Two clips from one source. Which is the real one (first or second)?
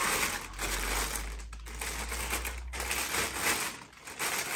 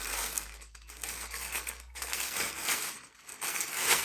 first